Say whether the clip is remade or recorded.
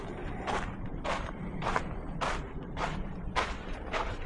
remade